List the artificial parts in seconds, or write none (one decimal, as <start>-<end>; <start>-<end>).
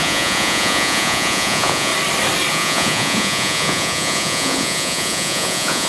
0.0-1.9; 2.5-5.9